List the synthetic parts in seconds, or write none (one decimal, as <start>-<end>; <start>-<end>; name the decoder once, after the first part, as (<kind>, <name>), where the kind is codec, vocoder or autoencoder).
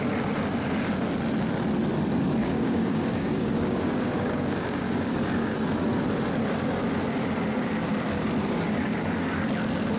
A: 2.4-5.1 (codec, DAC)